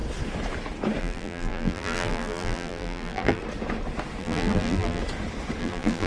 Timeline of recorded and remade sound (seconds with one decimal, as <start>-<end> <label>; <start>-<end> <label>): 0.0-1.0 recorded; 1.0-3.4 remade; 3.4-4.2 recorded; 4.2-5.0 remade; 5.0-5.6 recorded; 5.6-6.1 remade

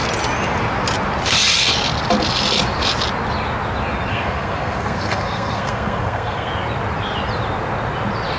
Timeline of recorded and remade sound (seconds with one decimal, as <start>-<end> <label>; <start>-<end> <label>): 0.0-4.1 recorded; 4.1-6.5 remade; 6.5-8.4 recorded

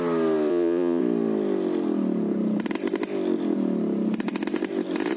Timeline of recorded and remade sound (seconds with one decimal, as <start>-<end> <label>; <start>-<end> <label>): 0.0-0.5 recorded; 0.5-1.0 remade; 1.0-5.2 recorded

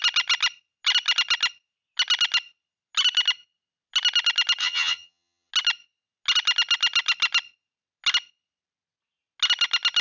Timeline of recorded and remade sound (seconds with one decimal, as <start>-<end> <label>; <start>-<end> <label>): 0.0-4.6 recorded; 4.6-5.5 remade; 5.5-10.0 recorded

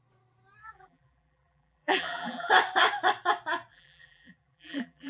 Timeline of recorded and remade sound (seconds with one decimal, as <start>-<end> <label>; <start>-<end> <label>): 0.0-0.6 recorded; 0.6-2.5 remade; 2.5-3.7 recorded; 3.7-5.1 remade